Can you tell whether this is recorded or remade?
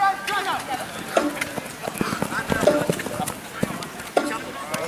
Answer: recorded